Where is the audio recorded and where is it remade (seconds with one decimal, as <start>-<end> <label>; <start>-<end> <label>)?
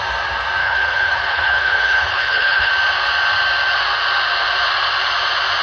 0.0-0.6 recorded; 0.6-2.7 remade; 2.7-5.6 recorded